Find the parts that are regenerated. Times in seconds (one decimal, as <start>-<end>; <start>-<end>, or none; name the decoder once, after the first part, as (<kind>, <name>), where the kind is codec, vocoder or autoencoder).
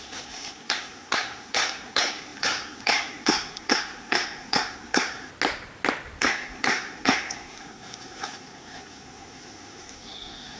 0.0-5.3 (codec, SNAC); 6.2-10.6